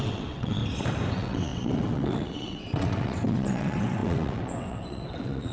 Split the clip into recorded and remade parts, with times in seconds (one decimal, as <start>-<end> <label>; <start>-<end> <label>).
0.0-0.6 remade; 0.6-1.1 recorded; 1.1-5.5 remade